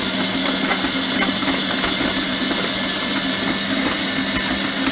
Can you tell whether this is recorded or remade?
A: recorded